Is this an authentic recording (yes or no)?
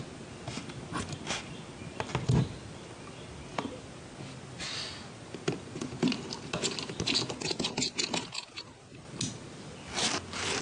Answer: yes